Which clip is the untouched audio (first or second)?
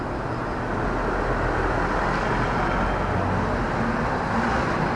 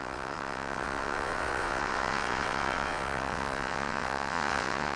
first